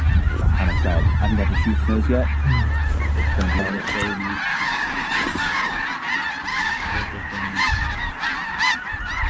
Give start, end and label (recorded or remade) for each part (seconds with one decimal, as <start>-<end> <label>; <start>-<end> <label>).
0.0-4.5 recorded; 4.5-5.8 remade; 5.8-6.5 recorded; 6.5-8.1 remade; 8.1-9.3 recorded